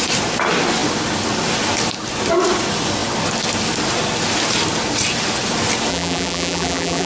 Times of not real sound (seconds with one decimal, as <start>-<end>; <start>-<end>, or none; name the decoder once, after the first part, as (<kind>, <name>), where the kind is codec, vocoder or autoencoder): 5.9-7.1 (vocoder, BigVGAN v2)